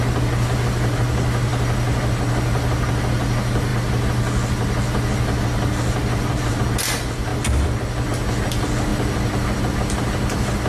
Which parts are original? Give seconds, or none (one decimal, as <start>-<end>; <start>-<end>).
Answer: 0.0-10.7